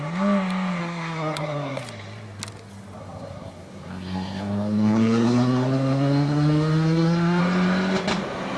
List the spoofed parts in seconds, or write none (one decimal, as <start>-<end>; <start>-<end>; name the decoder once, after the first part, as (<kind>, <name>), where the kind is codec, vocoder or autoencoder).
0.8-1.8 (codec, SNAC); 3.0-7.4